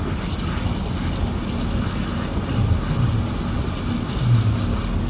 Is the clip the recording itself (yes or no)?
yes